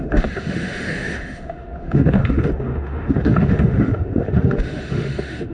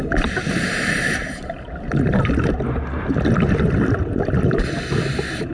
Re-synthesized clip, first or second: first